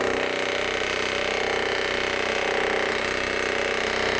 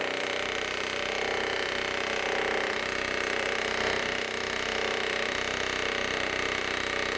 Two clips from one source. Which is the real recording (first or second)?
first